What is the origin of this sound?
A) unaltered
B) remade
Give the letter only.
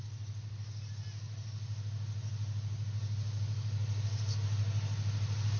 A